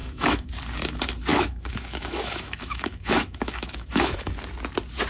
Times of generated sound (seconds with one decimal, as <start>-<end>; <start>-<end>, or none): 0.0-0.5; 1.3-4.3